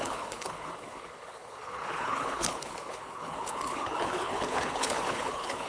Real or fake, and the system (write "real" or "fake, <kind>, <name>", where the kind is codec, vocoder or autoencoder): fake, codec, HILCodec